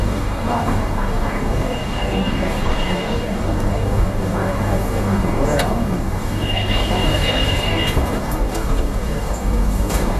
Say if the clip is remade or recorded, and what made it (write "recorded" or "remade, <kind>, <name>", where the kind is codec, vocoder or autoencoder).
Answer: remade, codec, DAC